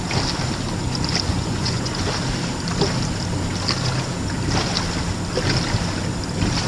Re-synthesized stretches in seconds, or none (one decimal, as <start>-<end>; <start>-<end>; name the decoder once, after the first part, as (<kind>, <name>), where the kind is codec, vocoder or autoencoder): 1.3-1.9 (vocoder, Vocos)